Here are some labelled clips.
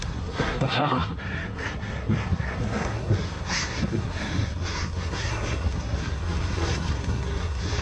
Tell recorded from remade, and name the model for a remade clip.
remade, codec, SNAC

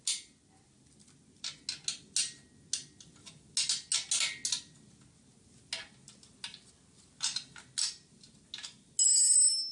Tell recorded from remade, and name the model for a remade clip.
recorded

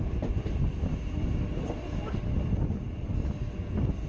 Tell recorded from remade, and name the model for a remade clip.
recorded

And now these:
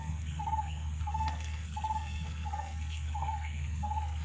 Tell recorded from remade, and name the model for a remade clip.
remade, codec, SNAC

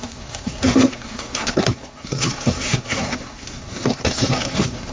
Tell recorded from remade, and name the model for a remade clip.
remade, codec, SNAC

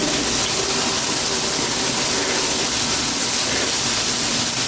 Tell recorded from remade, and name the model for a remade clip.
recorded